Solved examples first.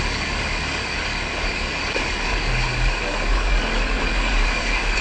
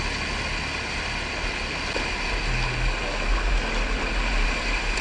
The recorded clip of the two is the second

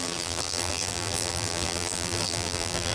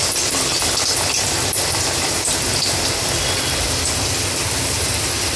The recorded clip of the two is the second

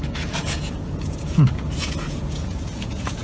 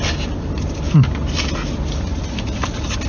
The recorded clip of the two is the second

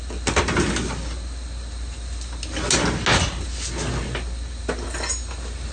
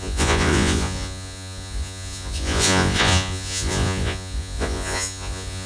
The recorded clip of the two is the first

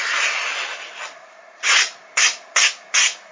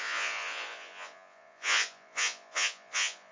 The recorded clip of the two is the first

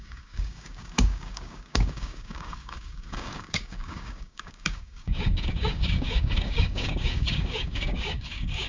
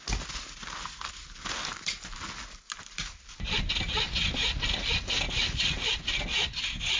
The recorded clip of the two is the second